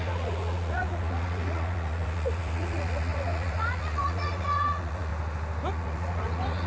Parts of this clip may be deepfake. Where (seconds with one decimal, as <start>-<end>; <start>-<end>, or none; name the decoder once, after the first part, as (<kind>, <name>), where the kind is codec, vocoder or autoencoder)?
0.0-5.1 (vocoder, Vocos); 5.7-6.7